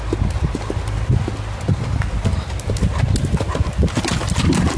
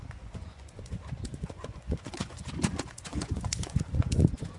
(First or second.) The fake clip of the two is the second